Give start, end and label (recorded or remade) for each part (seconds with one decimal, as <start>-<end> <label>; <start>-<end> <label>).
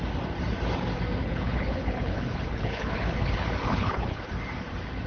0.0-1.2 recorded; 1.2-4.3 remade; 4.3-5.1 recorded